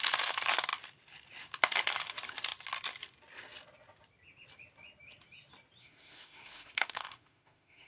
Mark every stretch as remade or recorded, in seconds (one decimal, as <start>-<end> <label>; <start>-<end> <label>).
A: 0.0-5.8 recorded; 5.8-7.9 remade